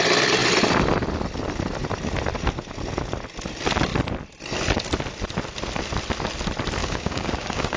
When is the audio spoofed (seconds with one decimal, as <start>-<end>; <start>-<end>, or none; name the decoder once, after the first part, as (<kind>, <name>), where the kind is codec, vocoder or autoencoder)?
6.8-7.8 (codec, DAC)